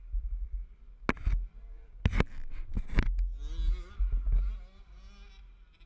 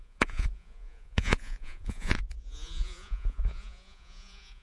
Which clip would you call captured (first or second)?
first